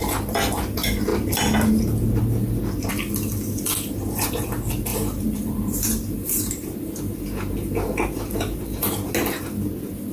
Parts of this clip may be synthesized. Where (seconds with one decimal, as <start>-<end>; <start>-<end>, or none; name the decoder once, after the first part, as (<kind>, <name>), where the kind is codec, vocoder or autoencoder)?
4.9-9.1 (vocoder, BigVGAN v2)